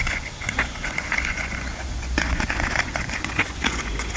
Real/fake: fake